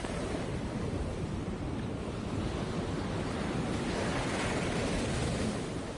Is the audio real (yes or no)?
yes